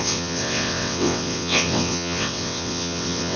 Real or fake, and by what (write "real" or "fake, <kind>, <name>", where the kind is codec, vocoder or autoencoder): fake, vocoder, WaveNeXt